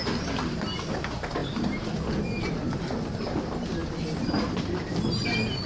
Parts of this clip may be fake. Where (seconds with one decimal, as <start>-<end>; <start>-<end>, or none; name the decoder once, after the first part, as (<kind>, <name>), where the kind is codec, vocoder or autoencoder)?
none